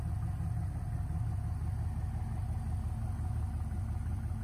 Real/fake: real